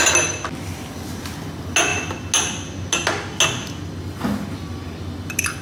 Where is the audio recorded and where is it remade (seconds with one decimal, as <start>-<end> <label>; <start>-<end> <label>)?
0.0-5.6 recorded